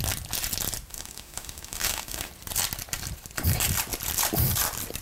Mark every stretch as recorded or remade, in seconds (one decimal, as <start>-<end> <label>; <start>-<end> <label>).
0.0-0.9 recorded; 0.9-2.3 remade; 2.3-5.0 recorded